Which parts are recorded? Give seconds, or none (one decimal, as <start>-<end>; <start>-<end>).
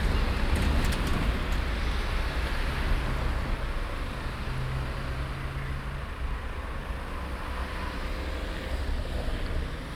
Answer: 0.0-10.0